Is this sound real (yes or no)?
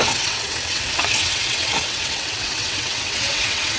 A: no